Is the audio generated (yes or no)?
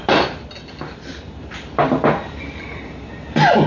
no